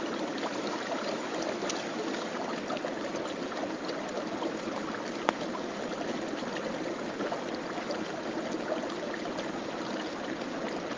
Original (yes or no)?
yes